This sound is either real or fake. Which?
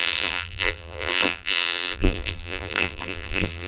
fake